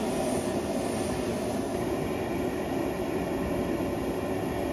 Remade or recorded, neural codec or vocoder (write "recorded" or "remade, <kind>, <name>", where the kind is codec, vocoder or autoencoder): recorded